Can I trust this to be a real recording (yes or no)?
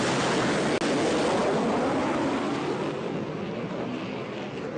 yes